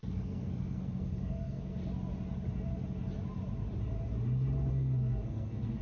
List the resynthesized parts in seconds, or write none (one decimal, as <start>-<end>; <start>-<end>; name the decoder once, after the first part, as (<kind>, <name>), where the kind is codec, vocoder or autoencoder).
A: 0.0-1.8 (codec, SNAC); 4.7-5.8